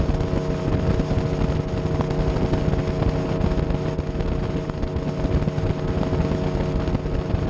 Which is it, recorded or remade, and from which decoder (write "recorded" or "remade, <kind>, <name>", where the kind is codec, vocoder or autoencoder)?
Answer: recorded